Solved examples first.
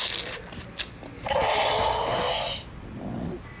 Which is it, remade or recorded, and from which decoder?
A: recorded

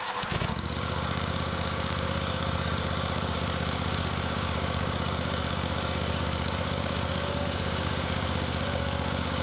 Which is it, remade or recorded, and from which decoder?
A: remade, codec, DAC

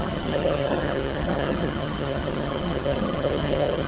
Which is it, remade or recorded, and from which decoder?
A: remade, vocoder, HiFi-GAN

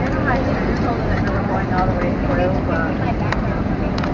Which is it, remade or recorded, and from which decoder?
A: recorded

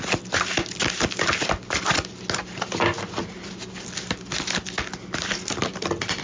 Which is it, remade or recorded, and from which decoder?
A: recorded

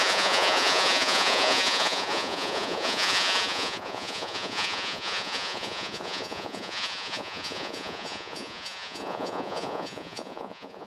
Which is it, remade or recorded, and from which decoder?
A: remade, vocoder, Vocos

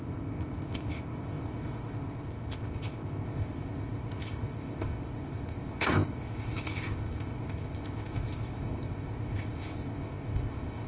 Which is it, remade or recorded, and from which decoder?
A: remade, codec, ZipCodec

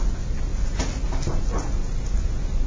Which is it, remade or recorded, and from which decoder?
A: recorded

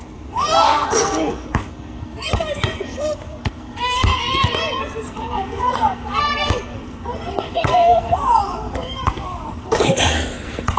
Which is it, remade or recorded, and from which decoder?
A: remade, codec, SNAC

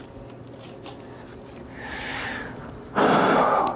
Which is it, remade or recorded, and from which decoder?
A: recorded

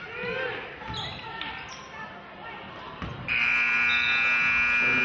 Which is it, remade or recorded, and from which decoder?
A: recorded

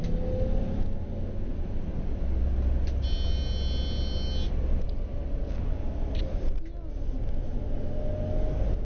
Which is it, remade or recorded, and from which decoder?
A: recorded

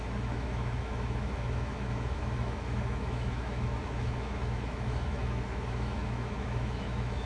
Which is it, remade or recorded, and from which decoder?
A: remade, autoencoder, DAC-VAE